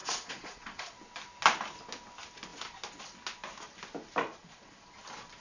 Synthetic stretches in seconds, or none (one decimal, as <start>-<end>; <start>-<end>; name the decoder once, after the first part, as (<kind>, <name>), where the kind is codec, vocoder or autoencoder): 0.0-1.0 (vocoder, Vocos); 4.3-5.0

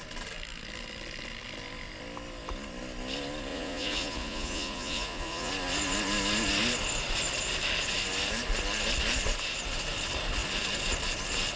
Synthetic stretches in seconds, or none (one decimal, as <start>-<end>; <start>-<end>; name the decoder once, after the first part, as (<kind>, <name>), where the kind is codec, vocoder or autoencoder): 3.5-5.5 (vocoder, Vocos)